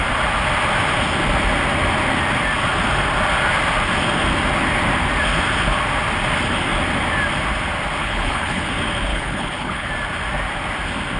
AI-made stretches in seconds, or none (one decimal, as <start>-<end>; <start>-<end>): 8.0-8.7; 9.1-9.9